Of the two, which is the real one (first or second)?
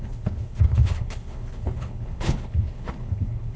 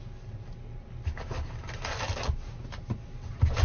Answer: second